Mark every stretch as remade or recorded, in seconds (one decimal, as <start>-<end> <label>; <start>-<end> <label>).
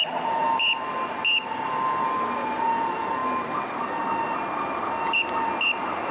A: 0.0-6.1 recorded